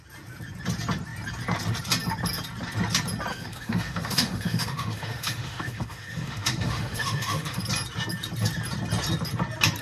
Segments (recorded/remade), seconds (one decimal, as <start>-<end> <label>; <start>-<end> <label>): 0.0-3.3 recorded; 3.3-7.6 remade; 7.6-9.8 recorded